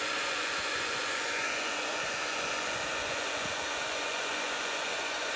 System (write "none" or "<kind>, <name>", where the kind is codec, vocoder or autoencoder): vocoder, Vocos